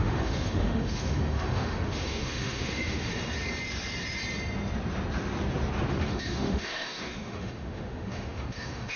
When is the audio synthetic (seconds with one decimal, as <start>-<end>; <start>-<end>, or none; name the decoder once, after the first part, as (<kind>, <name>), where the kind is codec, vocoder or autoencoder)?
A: 0.0-3.1 (autoencoder, DAC-VAE); 5.9-9.0

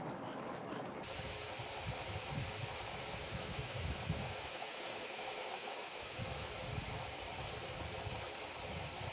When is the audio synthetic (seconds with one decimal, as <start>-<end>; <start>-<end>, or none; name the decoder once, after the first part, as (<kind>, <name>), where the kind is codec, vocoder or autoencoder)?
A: 3.1-6.2 (autoencoder, DAC-VAE)